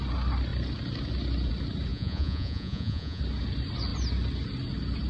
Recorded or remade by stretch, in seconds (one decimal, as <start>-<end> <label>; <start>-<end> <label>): 0.0-1.9 recorded; 1.9-3.2 remade; 3.2-5.1 recorded